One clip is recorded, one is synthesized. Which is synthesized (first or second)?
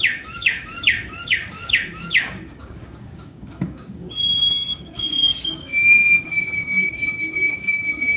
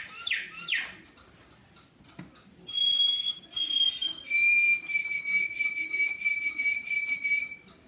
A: first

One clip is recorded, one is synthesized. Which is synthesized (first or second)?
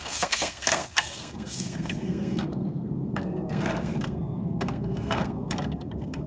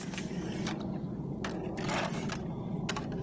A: first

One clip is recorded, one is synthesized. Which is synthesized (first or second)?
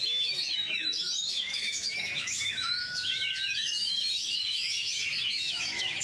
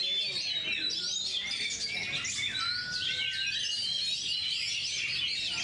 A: first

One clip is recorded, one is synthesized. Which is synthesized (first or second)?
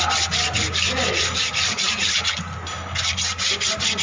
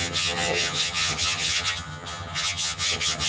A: second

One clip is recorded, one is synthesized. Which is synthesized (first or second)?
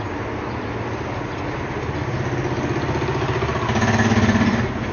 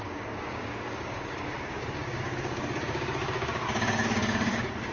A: second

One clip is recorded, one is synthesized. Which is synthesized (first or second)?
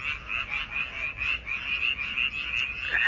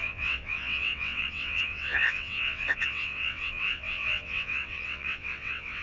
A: second